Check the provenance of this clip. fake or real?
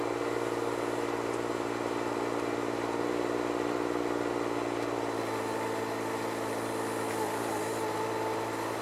real